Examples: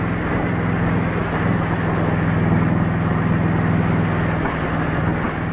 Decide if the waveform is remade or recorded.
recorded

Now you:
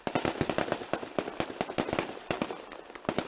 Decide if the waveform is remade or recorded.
recorded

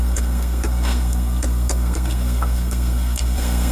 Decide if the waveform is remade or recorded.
remade